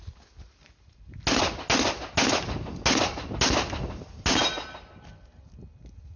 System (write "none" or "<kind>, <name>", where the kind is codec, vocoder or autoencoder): none